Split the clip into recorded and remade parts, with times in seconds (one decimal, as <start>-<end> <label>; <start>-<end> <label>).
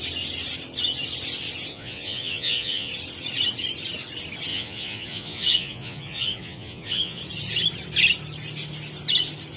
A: 0.0-1.7 recorded; 1.7-2.9 remade; 2.9-4.5 recorded; 4.5-7.2 remade; 7.2-9.6 recorded